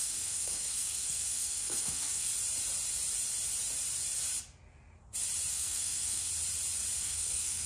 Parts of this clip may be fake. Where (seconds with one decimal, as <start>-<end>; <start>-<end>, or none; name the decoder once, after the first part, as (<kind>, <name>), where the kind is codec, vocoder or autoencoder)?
0.0-2.3 (codec, SNAC); 5.5-6.3; 7.0-7.7